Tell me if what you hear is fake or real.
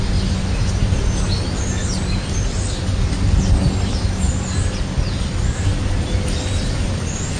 real